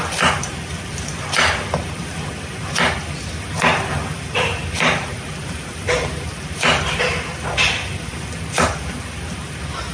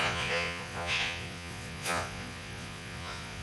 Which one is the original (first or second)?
first